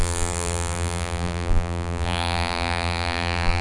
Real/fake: fake